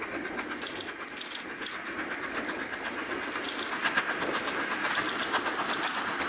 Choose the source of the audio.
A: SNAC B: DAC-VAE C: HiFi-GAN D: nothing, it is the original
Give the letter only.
D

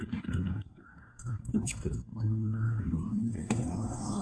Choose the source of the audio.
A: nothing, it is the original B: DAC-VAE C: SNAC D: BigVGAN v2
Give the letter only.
C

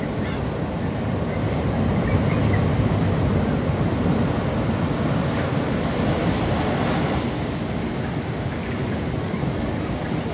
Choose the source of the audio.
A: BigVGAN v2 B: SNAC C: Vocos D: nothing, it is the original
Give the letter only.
D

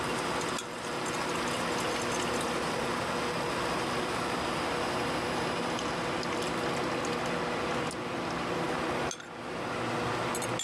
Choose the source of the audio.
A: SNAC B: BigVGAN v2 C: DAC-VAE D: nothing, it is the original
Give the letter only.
D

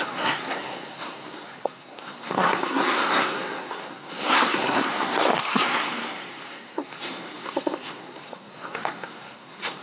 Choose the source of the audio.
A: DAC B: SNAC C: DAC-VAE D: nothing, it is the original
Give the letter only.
B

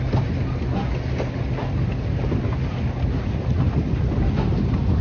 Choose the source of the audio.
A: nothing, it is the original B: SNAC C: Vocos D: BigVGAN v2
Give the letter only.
A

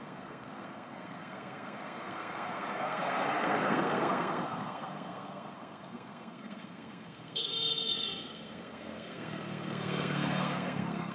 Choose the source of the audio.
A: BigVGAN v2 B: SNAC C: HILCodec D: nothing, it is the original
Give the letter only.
B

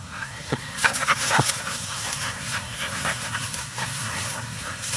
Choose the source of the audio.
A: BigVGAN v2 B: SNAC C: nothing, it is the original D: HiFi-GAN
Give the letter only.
B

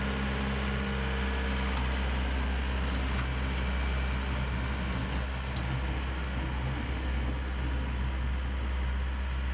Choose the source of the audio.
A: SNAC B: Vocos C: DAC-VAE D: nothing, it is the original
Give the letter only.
D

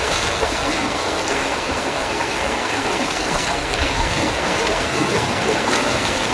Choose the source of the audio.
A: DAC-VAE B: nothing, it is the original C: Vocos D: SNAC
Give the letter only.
D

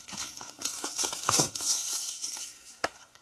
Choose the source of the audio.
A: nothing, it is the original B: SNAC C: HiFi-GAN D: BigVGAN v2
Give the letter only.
B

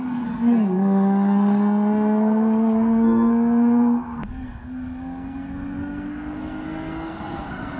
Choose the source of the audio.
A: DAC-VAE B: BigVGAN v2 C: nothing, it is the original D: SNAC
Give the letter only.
D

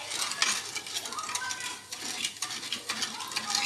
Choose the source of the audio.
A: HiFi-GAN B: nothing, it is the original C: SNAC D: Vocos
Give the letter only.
B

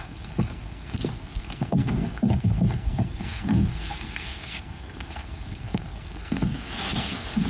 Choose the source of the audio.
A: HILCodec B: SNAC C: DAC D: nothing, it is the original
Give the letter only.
B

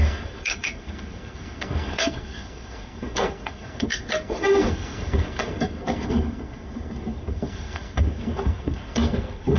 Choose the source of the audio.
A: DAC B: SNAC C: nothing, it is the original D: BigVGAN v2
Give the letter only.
B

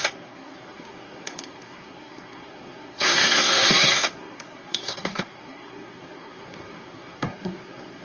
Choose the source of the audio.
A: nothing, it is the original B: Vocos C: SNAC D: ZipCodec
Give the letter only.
C